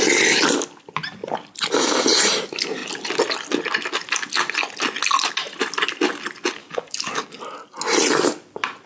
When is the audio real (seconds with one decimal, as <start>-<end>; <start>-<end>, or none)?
0.0-6.6; 7.4-8.9